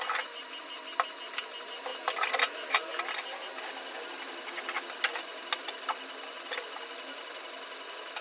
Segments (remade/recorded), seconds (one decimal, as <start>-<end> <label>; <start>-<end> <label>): 0.0-8.2 recorded